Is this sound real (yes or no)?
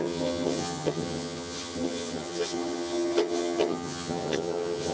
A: no